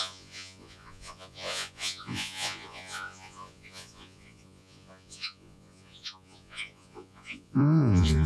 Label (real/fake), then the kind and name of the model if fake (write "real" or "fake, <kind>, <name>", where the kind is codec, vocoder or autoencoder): fake, vocoder, Vocos